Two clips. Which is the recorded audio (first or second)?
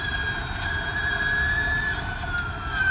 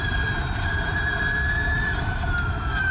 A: first